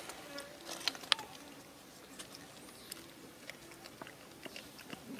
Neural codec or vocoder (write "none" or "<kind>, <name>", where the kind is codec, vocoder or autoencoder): none